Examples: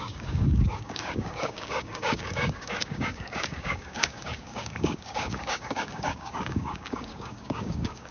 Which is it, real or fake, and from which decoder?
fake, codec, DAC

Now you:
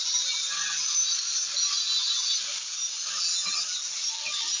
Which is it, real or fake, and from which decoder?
real